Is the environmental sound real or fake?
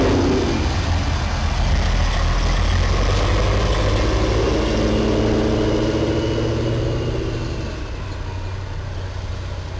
real